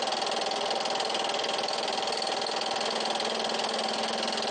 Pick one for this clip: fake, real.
real